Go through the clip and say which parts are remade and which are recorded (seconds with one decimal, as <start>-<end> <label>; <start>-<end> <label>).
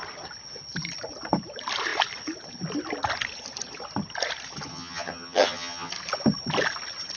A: 0.0-4.7 recorded; 4.7-5.9 remade; 5.9-7.2 recorded